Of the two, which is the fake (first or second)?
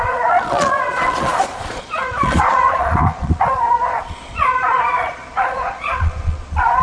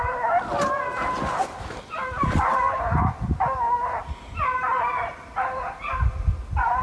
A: first